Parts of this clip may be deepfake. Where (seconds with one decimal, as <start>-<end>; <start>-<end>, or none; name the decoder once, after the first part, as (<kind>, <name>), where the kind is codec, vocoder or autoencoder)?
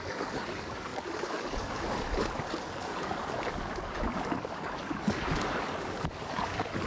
0.0-6.9 (codec, DAC)